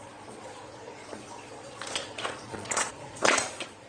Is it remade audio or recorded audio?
remade